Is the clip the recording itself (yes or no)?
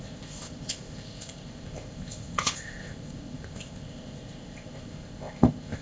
no